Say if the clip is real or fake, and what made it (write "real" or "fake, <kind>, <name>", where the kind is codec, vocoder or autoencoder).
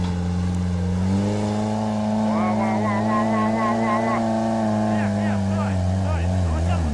real